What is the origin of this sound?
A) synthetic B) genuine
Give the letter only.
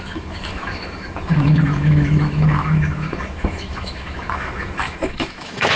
A